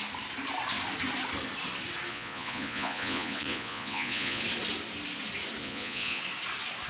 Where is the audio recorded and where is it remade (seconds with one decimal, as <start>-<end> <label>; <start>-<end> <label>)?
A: 0.0-2.1 recorded; 2.1-4.4 remade; 4.4-5.6 recorded; 5.6-6.2 remade; 6.2-6.9 recorded